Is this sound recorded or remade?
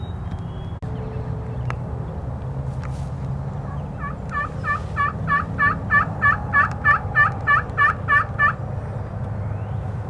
recorded